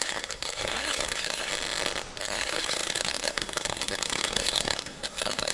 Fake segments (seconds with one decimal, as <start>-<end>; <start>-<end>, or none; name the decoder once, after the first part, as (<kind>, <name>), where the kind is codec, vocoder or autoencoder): 0.0-1.5 (codec, SNAC); 2.2-5.5